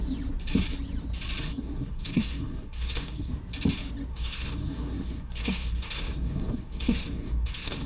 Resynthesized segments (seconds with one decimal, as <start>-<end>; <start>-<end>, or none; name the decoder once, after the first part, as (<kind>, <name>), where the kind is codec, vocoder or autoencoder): 1.5-3.4 (codec, SNAC); 4.1-7.9